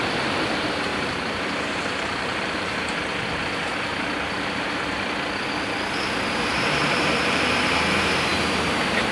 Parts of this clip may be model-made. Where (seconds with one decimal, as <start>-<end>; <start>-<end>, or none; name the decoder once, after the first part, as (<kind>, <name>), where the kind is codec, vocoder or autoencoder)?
0.0-3.0 (vocoder, BigVGAN v2); 6.3-9.1

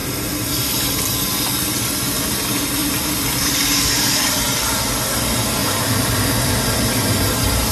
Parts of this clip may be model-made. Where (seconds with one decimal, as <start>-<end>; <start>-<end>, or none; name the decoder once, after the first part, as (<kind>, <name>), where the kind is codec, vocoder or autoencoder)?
0.0-0.9 (vocoder, BigVGAN v2); 2.8-3.6; 5.6-6.5

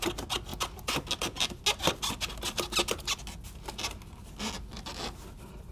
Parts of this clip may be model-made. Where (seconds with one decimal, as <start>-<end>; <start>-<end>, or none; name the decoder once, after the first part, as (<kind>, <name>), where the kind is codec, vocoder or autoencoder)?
none